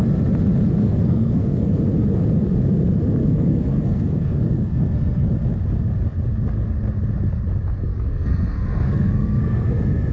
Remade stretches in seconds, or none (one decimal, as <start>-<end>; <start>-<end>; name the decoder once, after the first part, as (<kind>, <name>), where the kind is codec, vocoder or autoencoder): 0.8-1.8 (codec, SNAC); 3.2-5.3; 7.9-9.7